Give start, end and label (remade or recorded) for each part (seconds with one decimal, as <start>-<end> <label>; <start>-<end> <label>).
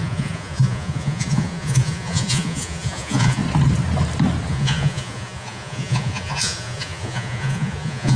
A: 0.0-3.4 remade; 3.4-4.5 recorded; 4.5-8.2 remade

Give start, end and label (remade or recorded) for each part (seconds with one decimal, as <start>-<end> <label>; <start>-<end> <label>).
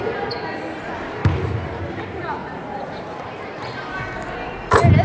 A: 0.0-2.4 recorded; 2.4-3.0 remade; 3.0-5.0 recorded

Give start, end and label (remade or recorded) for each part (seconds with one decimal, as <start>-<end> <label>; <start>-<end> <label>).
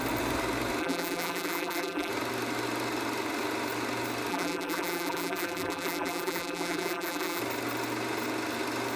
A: 0.0-0.8 recorded; 0.8-2.1 remade; 2.1-4.3 recorded; 4.3-7.4 remade; 7.4-9.0 recorded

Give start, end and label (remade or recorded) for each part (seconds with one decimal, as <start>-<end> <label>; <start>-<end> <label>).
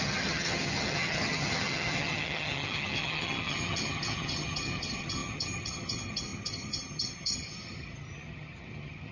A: 0.0-9.1 remade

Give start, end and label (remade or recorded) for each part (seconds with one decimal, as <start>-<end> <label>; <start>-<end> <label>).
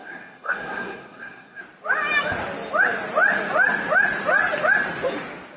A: 0.0-1.6 remade; 1.6-5.6 recorded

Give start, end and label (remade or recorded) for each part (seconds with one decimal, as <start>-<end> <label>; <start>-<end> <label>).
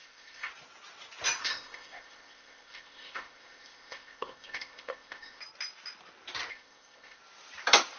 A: 0.0-0.5 remade; 0.5-1.4 recorded; 1.4-5.4 remade; 5.4-6.5 recorded; 6.5-7.2 remade; 7.2-8.0 recorded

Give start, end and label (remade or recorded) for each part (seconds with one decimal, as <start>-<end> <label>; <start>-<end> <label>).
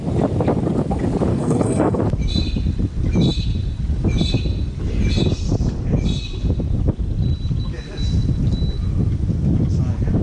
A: 0.0-1.3 recorded; 1.3-2.0 remade; 2.0-10.2 recorded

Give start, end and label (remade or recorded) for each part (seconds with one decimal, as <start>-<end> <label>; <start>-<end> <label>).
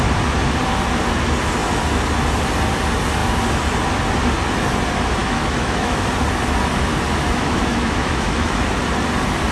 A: 0.0-5.2 recorded; 5.2-6.1 remade; 6.1-7.1 recorded; 7.1-8.6 remade; 8.6-9.5 recorded